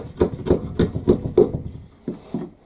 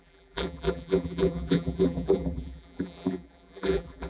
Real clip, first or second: first